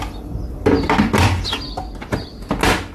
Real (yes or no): yes